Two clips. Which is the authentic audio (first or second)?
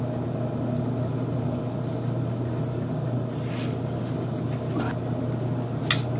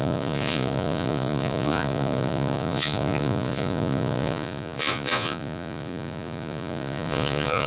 first